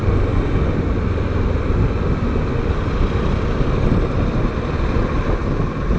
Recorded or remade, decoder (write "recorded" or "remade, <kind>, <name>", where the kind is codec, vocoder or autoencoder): recorded